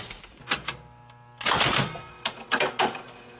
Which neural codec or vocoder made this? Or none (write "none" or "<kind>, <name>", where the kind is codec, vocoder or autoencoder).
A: none